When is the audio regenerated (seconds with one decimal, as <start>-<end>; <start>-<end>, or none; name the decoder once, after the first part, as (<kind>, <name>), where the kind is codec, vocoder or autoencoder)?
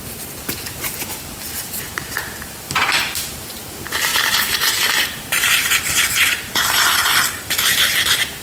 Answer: 0.0-8.4 (vocoder, BigVGAN v2)